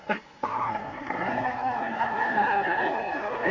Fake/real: fake